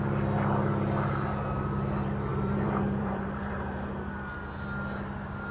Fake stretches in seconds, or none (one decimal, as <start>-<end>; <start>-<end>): 2.3-3.9